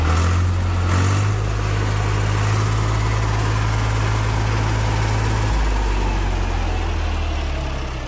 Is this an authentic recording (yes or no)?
yes